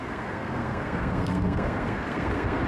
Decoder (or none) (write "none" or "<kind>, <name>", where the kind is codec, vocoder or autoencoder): codec, SNAC